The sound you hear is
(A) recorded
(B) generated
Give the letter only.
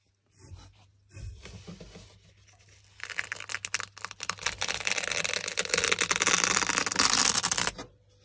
A